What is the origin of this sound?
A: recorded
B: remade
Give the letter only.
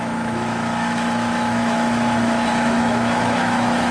B